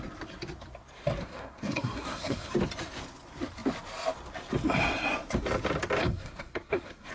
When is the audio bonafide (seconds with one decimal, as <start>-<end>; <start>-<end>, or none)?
0.0-1.2; 2.5-6.0